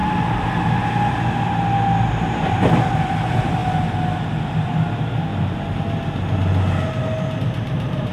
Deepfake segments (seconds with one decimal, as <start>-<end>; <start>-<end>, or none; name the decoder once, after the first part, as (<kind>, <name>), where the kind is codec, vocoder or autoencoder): 2.1-3.6 (vocoder, BigVGAN v2); 4.7-5.3; 7.4-8.1